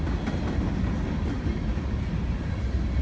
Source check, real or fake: real